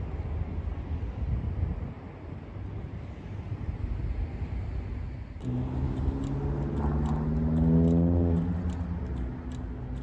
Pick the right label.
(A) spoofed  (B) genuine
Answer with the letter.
B